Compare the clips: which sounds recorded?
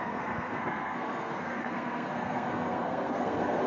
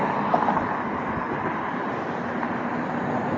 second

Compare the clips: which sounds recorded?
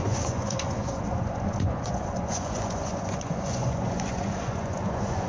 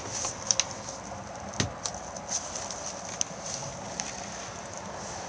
second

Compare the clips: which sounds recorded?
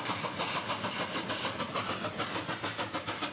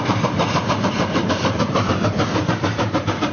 first